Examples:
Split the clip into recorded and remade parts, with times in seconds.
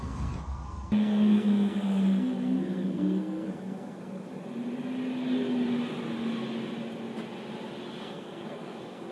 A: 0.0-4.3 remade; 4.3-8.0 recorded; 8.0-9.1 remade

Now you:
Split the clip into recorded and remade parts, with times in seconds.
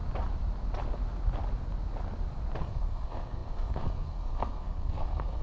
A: 0.0-2.6 recorded; 2.6-5.4 remade